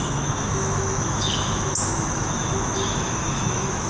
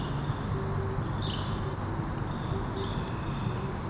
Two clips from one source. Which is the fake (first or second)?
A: first